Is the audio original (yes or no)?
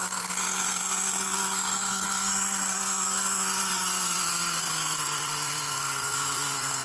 no